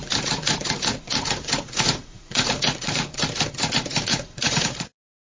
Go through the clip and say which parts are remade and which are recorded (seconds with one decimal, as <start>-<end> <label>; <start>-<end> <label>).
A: 0.0-3.2 remade; 3.2-4.1 recorded; 4.1-5.4 remade